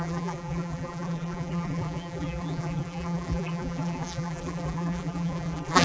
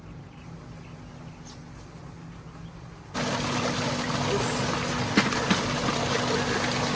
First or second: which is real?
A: second